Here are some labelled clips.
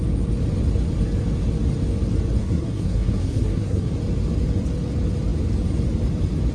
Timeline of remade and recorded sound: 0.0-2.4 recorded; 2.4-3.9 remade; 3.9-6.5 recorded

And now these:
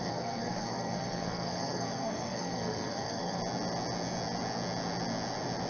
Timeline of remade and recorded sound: 0.0-3.4 remade; 3.4-5.7 recorded

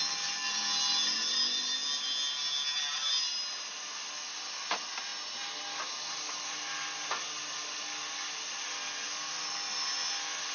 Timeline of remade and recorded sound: 0.0-10.5 recorded

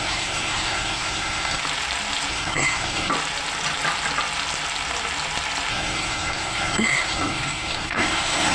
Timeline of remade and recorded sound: 0.0-1.6 remade; 1.6-2.3 recorded; 2.3-3.1 remade; 3.1-5.7 recorded; 5.7-8.5 remade

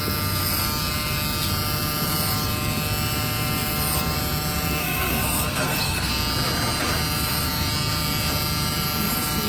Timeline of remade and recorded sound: 0.0-4.8 recorded; 4.8-6.1 remade; 6.1-9.5 recorded

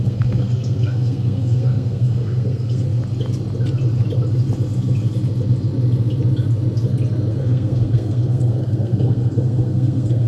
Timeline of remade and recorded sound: 0.0-3.0 remade; 3.0-7.3 recorded; 7.3-10.3 remade

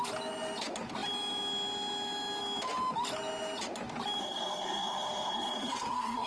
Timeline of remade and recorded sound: 0.0-4.2 recorded; 4.2-6.3 remade